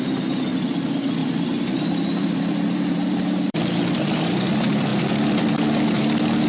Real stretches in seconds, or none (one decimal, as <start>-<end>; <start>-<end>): 0.0-1.2; 4.5-6.5